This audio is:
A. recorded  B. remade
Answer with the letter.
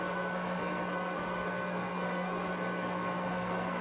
B